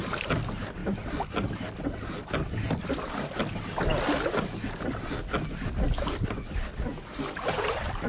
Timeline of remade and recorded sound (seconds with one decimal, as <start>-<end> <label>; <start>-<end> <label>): 0.0-8.1 recorded